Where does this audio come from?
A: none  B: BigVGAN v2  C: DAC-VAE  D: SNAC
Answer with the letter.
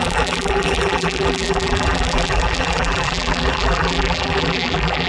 B